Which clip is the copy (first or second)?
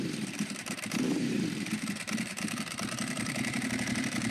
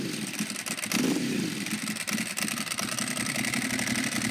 first